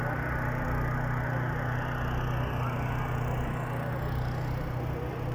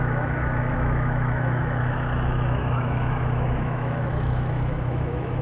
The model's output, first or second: second